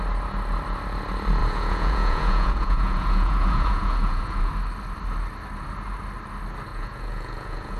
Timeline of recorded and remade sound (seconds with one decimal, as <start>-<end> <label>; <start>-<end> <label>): 0.0-1.4 recorded; 1.4-4.5 remade; 4.5-6.7 recorded; 6.7-7.8 remade